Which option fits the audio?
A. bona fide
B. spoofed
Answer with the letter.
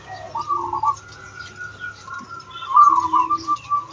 A